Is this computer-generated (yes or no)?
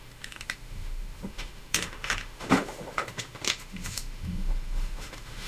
yes